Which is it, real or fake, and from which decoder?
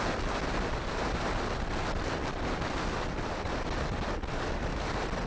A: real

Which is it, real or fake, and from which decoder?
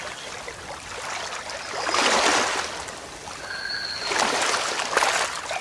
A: real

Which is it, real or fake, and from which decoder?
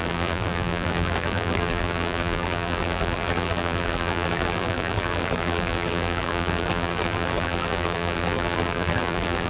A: fake, vocoder, BigVGAN v2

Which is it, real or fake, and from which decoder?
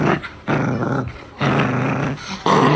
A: real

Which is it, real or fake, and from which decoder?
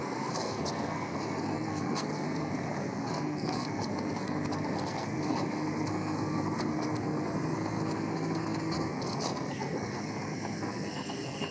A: fake, codec, SNAC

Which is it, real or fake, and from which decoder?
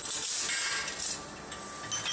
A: real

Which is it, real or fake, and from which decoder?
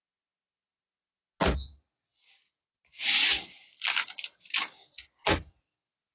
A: real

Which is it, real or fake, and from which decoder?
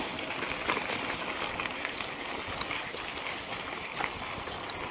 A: real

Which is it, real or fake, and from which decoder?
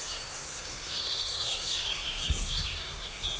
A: fake, codec, SNAC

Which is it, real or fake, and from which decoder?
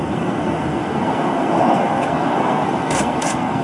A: fake, codec, SNAC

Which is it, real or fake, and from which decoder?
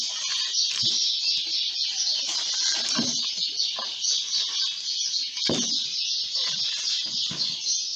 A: real